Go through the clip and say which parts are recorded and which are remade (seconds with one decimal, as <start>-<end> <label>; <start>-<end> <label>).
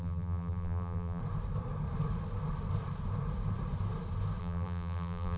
0.0-1.2 remade; 1.2-4.4 recorded; 4.4-5.4 remade